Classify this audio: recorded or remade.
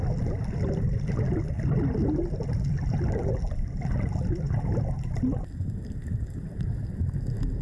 recorded